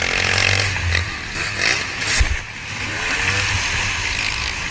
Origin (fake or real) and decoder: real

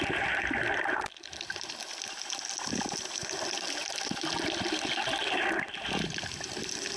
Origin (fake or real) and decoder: real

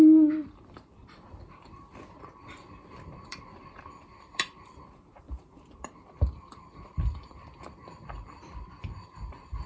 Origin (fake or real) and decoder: fake, vocoder, BigVGAN v2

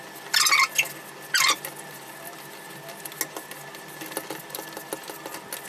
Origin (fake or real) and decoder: real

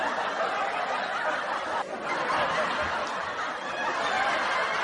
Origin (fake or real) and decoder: fake, vocoder, BigVGAN v2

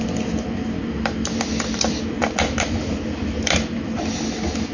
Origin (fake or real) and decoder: fake, vocoder, BigVGAN v2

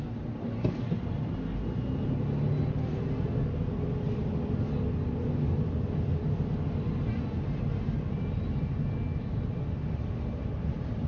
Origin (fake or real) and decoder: real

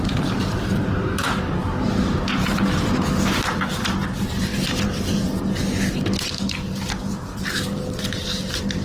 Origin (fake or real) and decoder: fake, vocoder, BigVGAN v2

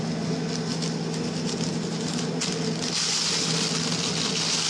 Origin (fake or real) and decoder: real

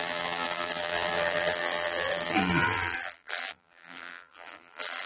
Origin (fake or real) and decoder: fake, vocoder, BigVGAN v2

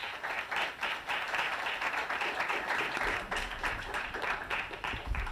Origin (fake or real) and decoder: fake, vocoder, BigVGAN v2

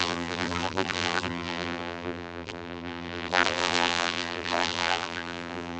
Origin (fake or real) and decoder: fake, vocoder, BigVGAN v2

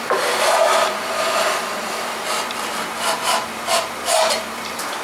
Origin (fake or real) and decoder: fake, vocoder, BigVGAN v2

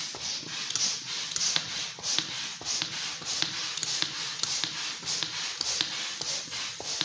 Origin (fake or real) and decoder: real